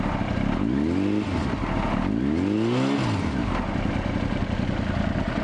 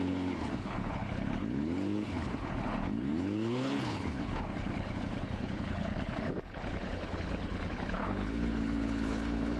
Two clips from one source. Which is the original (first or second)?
first